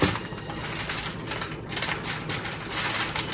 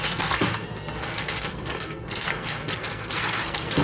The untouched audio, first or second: first